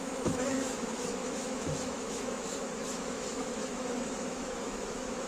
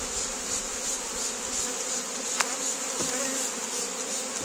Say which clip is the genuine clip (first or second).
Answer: second